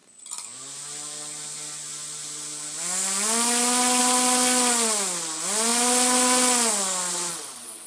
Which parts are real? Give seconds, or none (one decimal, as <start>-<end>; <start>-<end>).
0.0-7.3